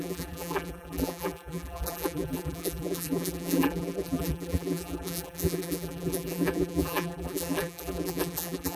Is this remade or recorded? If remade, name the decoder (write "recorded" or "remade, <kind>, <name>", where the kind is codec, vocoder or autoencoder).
remade, vocoder, BigVGAN v2